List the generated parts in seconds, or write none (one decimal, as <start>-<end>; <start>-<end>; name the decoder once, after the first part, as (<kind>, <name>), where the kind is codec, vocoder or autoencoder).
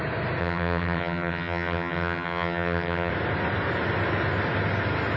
0.4-3.1 (vocoder, HiFi-GAN)